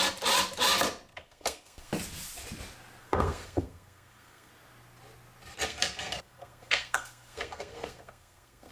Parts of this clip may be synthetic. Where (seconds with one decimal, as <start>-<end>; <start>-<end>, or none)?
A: 1.1-1.9; 3.0-4.5; 5.7-8.7